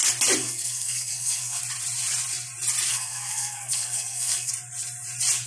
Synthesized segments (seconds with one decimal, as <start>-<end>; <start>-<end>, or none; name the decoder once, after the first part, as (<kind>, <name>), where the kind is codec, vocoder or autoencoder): 0.4-1.6 (codec, SNAC); 2.9-4.5